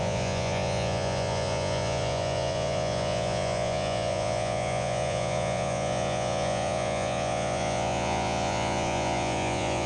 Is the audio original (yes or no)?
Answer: no